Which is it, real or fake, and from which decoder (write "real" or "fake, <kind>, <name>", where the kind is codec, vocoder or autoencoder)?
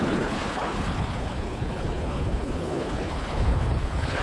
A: fake, codec, HILCodec